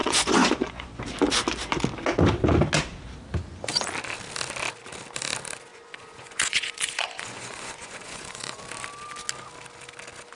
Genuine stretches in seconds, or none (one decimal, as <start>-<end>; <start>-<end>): 1.0-5.7; 8.6-10.4